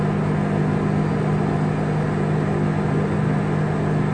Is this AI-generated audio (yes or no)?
no